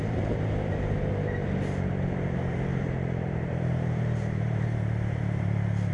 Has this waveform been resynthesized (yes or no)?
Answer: yes